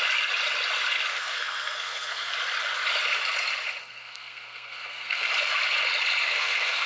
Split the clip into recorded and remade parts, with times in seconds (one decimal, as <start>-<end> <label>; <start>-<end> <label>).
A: 0.0-1.1 recorded; 1.1-2.3 remade; 2.3-3.8 recorded; 3.8-5.3 remade; 5.3-6.2 recorded; 6.2-6.9 remade